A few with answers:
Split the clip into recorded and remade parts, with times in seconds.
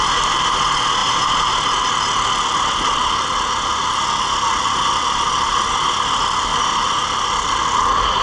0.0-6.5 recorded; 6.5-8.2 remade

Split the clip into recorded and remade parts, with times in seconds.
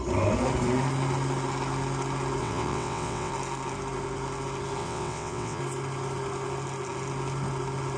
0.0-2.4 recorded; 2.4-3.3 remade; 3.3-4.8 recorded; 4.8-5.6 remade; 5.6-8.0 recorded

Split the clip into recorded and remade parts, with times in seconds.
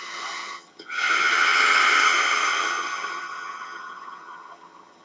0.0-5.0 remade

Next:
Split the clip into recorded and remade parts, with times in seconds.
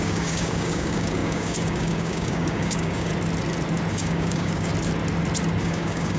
0.0-3.1 remade; 3.1-3.9 recorded; 3.9-4.7 remade; 4.7-5.6 recorded; 5.6-6.2 remade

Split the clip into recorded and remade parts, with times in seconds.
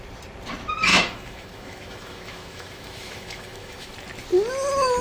0.0-0.9 recorded; 0.9-3.9 remade; 3.9-5.0 recorded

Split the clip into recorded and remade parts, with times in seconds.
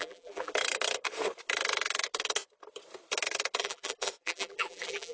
0.0-0.5 remade; 0.5-3.6 recorded; 3.6-5.1 remade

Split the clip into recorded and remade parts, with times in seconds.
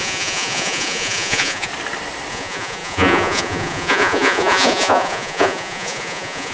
0.0-1.7 remade; 1.7-2.3 recorded; 2.3-6.5 remade